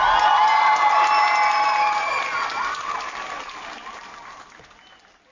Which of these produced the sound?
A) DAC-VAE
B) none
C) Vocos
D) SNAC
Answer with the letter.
B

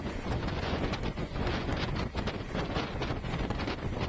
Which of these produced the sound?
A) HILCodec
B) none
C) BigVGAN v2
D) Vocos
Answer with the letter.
D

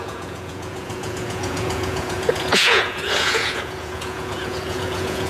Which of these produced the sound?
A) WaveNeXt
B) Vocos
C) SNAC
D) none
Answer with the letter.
B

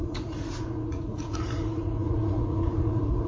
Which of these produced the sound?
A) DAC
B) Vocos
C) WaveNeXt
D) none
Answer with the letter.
B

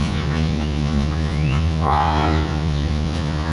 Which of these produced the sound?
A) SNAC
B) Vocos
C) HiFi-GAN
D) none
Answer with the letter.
B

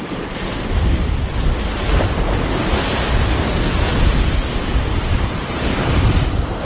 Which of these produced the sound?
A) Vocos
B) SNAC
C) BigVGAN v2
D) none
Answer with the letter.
D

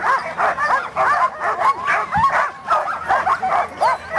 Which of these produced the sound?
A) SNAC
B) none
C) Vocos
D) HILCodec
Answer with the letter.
B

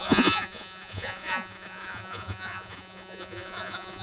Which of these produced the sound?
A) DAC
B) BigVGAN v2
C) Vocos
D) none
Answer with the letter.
C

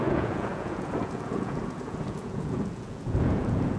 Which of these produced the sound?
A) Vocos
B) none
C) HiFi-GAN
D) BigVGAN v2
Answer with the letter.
A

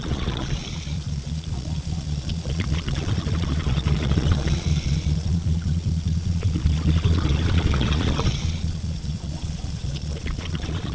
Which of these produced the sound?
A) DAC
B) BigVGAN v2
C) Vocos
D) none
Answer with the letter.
C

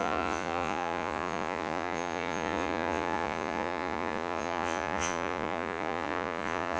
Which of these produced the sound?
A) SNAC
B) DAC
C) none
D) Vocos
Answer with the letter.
D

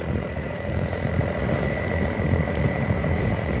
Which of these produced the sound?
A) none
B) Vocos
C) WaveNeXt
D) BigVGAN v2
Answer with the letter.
B